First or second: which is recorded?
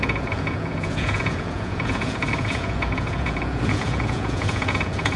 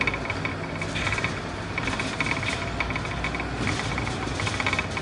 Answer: second